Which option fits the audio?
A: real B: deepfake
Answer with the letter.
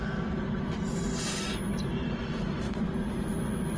A